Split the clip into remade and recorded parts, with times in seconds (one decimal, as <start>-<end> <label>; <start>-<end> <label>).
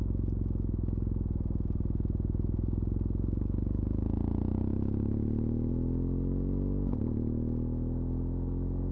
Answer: 0.0-8.9 recorded